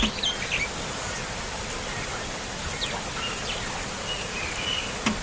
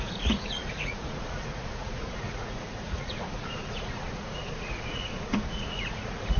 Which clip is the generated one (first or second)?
second